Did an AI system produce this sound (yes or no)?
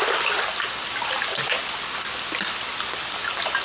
no